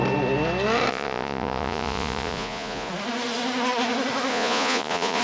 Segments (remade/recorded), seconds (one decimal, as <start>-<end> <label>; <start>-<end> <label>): 0.0-0.9 recorded; 0.9-2.9 remade; 2.9-4.3 recorded; 4.3-5.2 remade